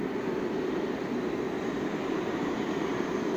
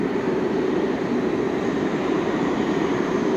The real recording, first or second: first